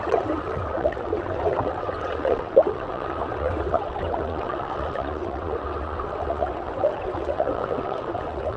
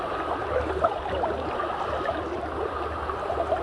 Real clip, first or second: second